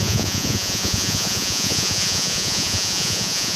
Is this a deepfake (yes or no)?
yes